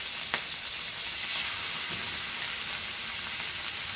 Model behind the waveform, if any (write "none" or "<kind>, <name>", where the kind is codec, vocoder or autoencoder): none